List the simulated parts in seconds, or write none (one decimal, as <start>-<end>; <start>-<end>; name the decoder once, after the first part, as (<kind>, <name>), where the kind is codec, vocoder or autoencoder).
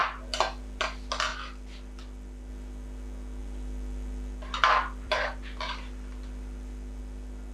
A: 1.3-2.5 (vocoder, BigVGAN v2); 3.4-7.0